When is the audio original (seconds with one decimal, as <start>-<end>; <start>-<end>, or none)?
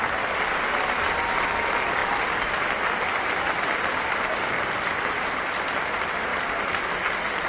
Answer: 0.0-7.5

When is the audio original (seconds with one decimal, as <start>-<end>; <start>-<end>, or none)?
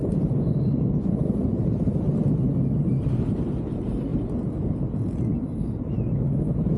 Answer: 0.0-6.8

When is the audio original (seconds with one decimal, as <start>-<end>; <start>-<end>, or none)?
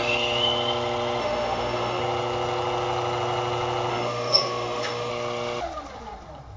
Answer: 0.0-1.2; 2.0-3.9; 5.1-6.6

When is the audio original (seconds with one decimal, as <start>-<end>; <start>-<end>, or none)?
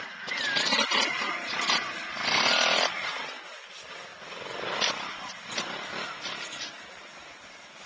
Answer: 0.0-7.9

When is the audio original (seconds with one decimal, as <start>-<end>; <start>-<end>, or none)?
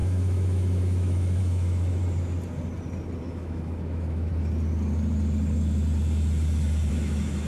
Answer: 2.0-3.2; 4.3-6.9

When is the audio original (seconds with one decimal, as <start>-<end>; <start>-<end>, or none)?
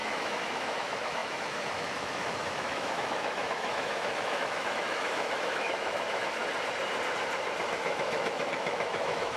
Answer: 6.4-7.6